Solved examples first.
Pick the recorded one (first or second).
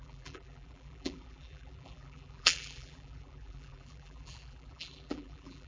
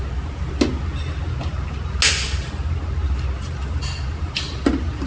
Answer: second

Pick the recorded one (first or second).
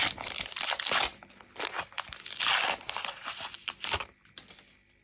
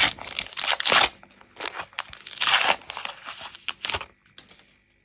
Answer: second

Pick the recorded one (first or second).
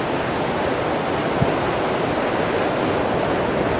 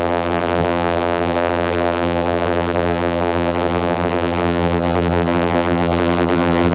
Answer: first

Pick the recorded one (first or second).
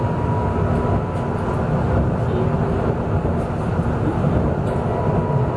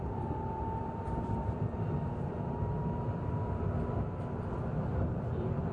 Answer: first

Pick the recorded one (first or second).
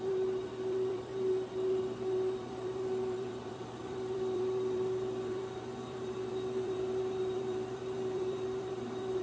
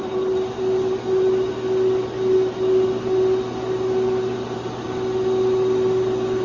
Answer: second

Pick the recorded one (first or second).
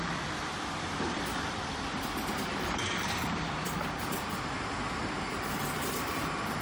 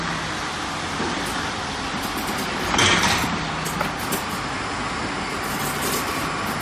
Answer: second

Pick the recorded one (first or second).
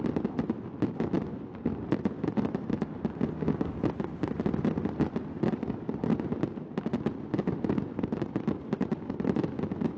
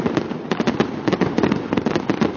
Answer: first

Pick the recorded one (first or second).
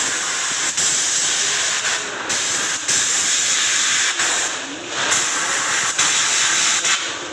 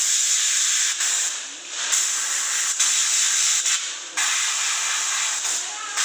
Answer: first